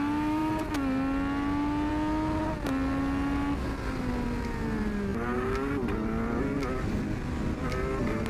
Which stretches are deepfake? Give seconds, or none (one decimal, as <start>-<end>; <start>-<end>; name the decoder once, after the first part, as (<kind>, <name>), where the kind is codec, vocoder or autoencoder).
none